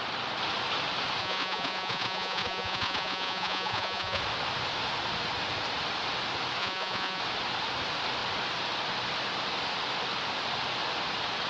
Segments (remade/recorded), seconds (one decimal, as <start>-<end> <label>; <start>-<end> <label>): 0.0-1.2 recorded; 1.2-4.2 remade; 4.2-6.6 recorded; 6.6-7.2 remade; 7.2-11.5 recorded